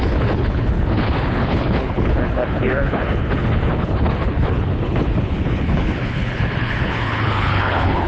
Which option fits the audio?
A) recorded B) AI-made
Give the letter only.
B